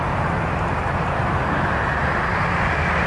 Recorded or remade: recorded